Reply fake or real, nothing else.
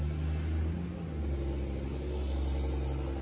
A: real